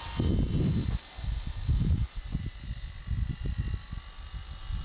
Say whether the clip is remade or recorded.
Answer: recorded